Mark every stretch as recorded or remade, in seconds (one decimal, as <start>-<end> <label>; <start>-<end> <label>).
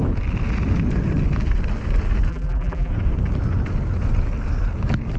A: 0.0-2.3 recorded; 2.3-2.9 remade; 2.9-5.2 recorded